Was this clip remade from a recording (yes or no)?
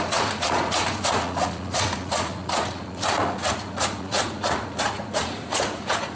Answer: yes